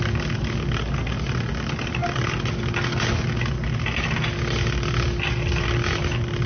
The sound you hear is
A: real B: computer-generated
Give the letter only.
A